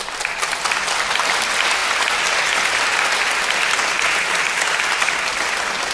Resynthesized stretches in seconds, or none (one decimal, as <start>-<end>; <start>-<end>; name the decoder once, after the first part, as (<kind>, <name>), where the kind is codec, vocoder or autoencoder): none

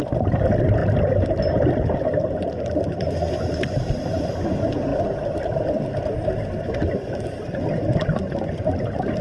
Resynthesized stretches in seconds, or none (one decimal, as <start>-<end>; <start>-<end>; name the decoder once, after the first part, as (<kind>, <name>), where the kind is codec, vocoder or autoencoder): 0.0-4.9 (vocoder, BigVGAN v2)

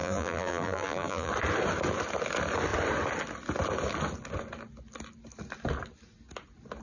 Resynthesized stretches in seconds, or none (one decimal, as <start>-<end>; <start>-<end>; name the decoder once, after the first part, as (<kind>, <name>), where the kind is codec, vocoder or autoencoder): 0.0-1.3 (vocoder, BigVGAN v2)

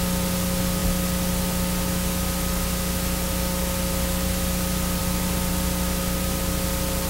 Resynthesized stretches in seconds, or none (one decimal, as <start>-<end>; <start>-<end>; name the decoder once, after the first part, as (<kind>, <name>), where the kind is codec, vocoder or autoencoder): none

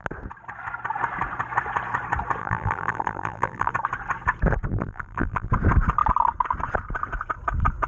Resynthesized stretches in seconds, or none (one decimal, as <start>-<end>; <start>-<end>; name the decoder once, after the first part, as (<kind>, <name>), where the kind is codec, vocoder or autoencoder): 2.4-3.7 (vocoder, BigVGAN v2); 4.7-5.5

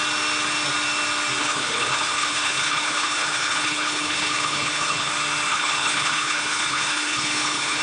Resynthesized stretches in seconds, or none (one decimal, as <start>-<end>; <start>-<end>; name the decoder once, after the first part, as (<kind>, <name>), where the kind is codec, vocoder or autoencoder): 1.4-5.1 (codec, HILCodec); 5.5-7.8

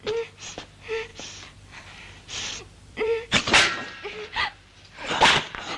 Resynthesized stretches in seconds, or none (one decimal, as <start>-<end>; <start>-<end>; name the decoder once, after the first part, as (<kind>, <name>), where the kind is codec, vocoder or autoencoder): 1.1-3.6 (vocoder, BigVGAN v2)

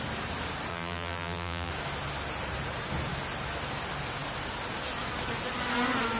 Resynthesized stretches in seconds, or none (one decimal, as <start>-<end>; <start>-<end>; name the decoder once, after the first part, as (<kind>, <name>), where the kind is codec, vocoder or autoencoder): 0.7-1.7 (vocoder, BigVGAN v2)